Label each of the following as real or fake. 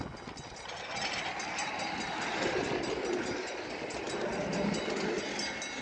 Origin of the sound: real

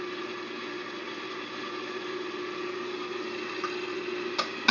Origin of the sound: real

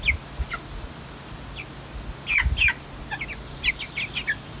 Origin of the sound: real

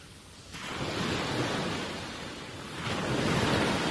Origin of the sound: real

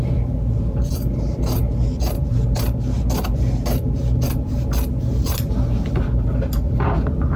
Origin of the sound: real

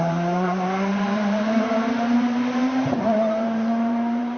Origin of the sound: fake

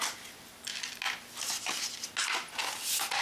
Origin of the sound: real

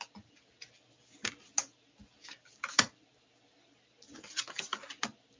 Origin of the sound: real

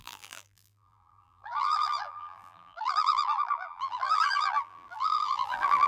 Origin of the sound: fake